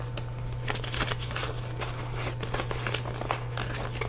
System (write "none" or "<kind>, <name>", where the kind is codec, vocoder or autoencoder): none